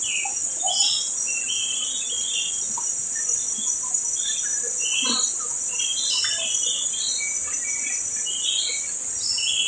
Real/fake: real